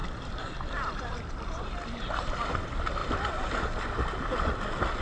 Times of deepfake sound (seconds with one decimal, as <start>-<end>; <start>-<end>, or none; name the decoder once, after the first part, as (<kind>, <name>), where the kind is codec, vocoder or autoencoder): 0.0-2.5 (vocoder, BigVGAN v2); 3.0-3.6